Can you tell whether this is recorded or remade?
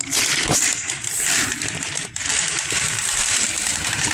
remade